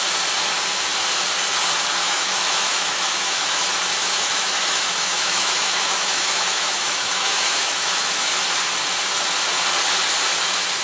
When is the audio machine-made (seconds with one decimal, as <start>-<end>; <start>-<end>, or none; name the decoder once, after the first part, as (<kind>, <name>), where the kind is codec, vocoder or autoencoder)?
2.0-3.6 (autoencoder, DAC-VAE); 4.0-8.3